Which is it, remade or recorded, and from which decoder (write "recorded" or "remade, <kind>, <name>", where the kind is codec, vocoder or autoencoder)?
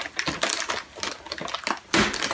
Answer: recorded